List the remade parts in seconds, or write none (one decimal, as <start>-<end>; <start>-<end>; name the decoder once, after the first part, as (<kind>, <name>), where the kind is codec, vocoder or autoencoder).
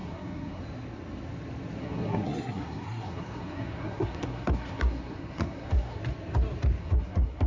0.0-0.6 (codec, SNAC); 1.8-6.0; 6.8-7.5